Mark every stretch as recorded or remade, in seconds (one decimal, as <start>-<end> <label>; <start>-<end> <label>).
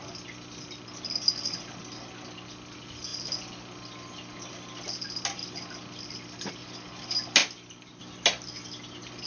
0.0-9.3 recorded